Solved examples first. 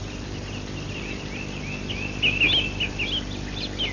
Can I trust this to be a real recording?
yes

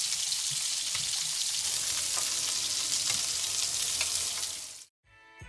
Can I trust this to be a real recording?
yes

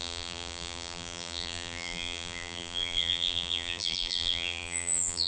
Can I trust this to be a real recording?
no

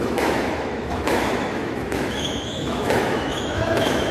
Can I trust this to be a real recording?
no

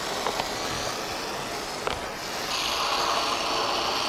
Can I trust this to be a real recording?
yes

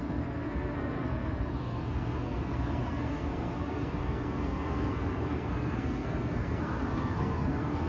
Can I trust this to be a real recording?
no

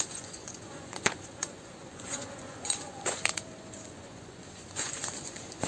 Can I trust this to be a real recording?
no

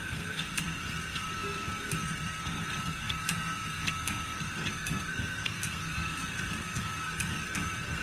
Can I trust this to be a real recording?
no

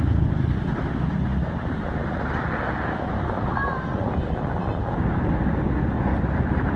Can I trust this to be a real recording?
yes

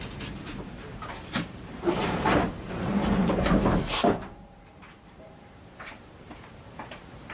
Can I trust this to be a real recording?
no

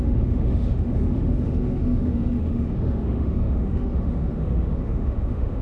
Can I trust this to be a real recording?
no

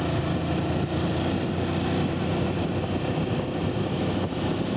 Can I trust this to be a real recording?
yes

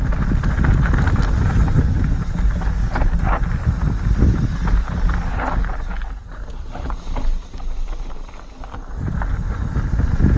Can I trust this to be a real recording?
yes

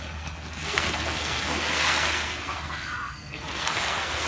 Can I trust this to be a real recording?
no